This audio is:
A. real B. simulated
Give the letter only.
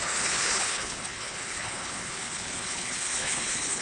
B